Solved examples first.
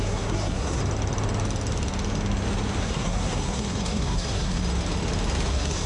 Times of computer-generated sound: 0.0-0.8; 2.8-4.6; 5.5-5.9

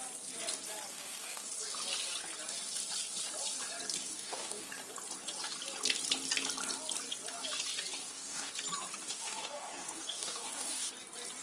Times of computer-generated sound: 0.9-1.5; 4.0-4.7; 8.0-8.5; 9.0-10.9

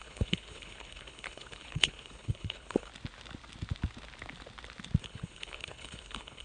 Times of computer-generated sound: 0.0-2.9; 5.0-6.4

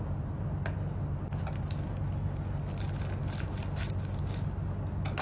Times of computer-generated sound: none

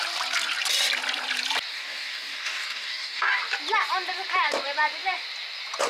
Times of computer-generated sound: 1.7-3.4

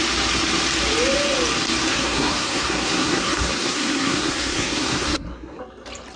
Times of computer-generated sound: 1.9-5.6